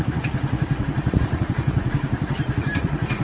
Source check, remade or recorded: remade